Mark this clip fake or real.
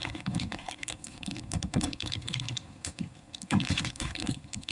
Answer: fake